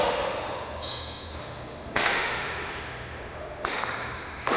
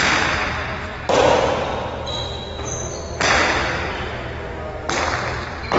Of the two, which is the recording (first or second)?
second